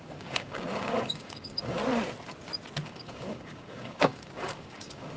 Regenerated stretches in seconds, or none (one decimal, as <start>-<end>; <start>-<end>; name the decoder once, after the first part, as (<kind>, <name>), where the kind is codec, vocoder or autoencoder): 0.0-1.8 (codec, DAC); 2.8-5.2